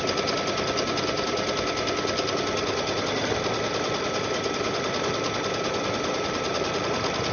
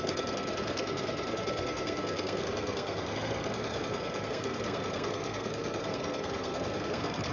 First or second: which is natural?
first